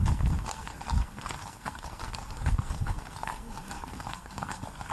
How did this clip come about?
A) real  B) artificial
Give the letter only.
B